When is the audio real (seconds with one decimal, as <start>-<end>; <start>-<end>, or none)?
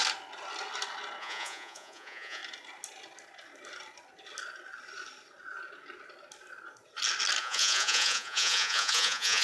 0.0-1.2; 2.4-7.4